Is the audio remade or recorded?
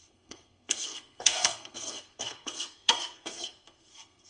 remade